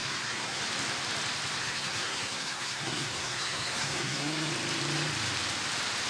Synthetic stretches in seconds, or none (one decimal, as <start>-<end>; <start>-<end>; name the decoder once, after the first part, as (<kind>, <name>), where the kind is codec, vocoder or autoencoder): 0.0-0.6 (codec, SNAC); 1.6-4.5